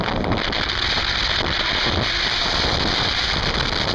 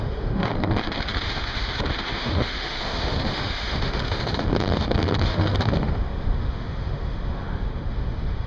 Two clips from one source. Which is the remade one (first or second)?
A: second